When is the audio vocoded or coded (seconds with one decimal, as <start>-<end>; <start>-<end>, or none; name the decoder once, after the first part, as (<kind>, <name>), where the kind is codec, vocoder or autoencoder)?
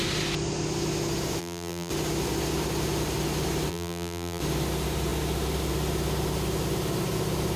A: 1.4-1.9 (vocoder, BigVGAN v2); 3.7-4.4